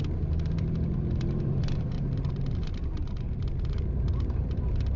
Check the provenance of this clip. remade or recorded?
remade